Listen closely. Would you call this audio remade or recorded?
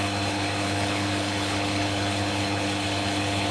remade